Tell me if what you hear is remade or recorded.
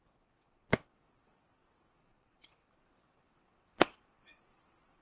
remade